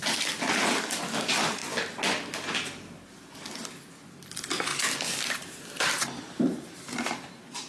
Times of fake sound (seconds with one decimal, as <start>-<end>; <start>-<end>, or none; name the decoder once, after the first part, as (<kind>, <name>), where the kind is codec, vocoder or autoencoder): none